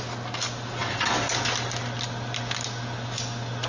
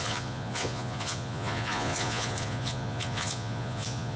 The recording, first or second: first